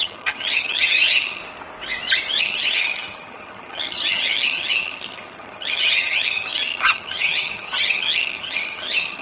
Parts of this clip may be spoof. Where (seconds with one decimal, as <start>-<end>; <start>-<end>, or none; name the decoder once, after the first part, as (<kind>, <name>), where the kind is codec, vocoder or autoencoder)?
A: 0.0-1.4 (vocoder, HiFi-GAN); 2.4-9.2